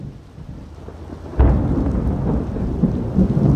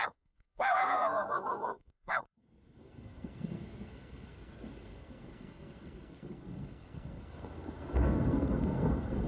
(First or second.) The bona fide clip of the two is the first